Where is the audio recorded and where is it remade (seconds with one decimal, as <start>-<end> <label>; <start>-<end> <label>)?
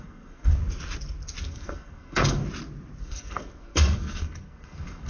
0.0-0.6 remade; 0.6-1.4 recorded; 1.4-2.4 remade; 2.4-3.0 recorded; 3.0-5.1 remade